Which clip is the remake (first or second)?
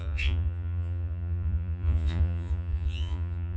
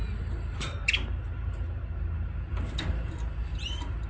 first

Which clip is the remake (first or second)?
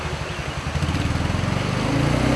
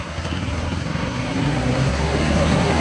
second